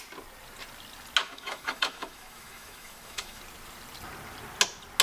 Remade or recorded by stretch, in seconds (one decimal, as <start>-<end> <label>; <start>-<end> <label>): 0.0-1.2 recorded; 1.2-3.4 remade; 3.4-5.0 recorded